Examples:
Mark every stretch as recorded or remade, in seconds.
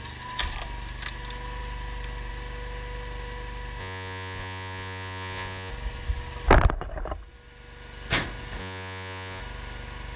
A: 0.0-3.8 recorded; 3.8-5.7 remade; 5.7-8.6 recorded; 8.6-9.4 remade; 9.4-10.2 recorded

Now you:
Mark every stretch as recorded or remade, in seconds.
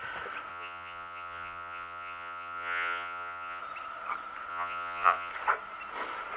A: 0.0-0.5 recorded; 0.5-3.6 remade; 3.6-4.5 recorded; 4.5-5.3 remade; 5.3-6.4 recorded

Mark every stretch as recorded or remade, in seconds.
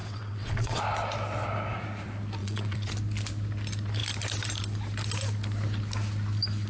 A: 0.0-0.8 remade; 0.8-2.4 recorded; 2.4-2.9 remade; 2.9-6.7 recorded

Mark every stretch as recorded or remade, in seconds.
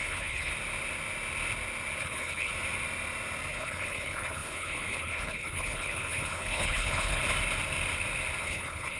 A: 0.0-0.5 remade; 0.5-2.0 recorded; 2.0-2.5 remade; 2.5-3.5 recorded; 3.5-7.2 remade; 7.2-8.4 recorded; 8.4-9.0 remade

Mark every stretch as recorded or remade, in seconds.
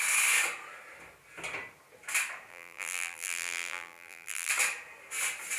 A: 0.0-2.5 recorded; 2.5-4.5 remade; 4.5-5.6 recorded